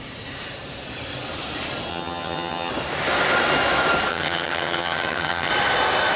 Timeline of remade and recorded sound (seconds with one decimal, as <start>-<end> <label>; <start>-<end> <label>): 0.0-1.9 recorded; 1.9-2.7 remade; 2.7-4.1 recorded; 4.1-5.5 remade; 5.5-6.2 recorded